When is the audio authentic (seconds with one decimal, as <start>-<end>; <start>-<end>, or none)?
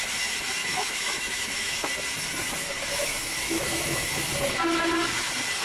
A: 0.0-0.6; 1.9-2.9; 4.3-5.6